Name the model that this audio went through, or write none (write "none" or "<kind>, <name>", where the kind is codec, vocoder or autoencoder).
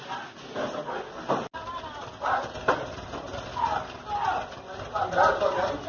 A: none